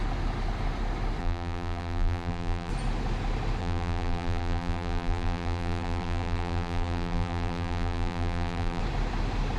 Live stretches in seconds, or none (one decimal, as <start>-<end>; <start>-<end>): 0.0-1.2; 2.7-3.6; 8.8-9.6